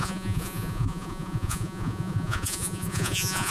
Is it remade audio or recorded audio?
remade